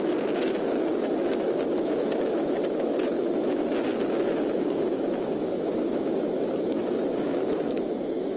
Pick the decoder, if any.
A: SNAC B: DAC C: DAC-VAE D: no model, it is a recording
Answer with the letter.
C